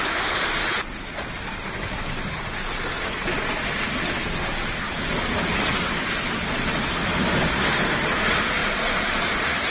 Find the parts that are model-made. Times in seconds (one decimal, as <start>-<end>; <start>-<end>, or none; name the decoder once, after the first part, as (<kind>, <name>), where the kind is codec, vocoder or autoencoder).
none